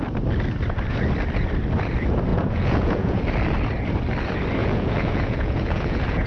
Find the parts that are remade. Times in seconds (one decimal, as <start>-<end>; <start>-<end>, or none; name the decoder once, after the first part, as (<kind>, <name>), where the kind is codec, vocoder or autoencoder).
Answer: 2.3-3.2 (vocoder, Vocos); 4.6-6.3